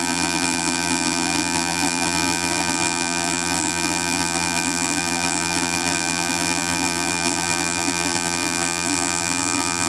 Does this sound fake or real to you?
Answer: fake